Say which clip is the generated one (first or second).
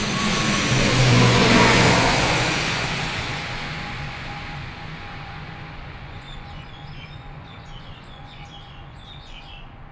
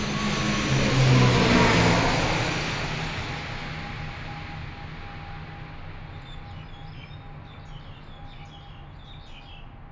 first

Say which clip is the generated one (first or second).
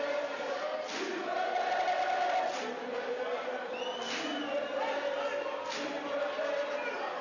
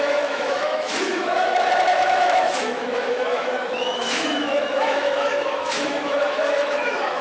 second